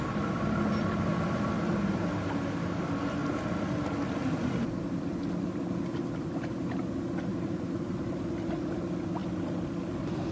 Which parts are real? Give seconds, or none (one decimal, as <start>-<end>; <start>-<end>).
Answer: 0.0-7.3; 8.2-10.3